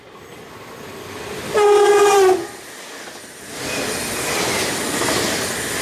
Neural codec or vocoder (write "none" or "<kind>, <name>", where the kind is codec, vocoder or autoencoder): none